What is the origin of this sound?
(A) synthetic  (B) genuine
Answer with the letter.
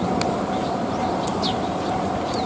B